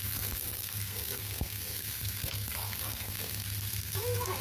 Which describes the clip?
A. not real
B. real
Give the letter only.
A